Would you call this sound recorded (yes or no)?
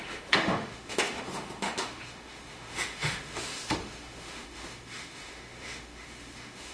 no